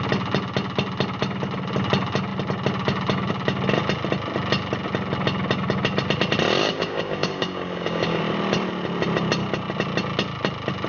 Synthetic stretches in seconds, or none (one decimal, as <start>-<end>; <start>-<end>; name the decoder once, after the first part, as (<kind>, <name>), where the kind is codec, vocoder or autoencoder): 6.6-8.2 (codec, DAC)